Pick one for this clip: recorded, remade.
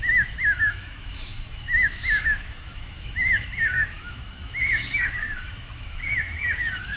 remade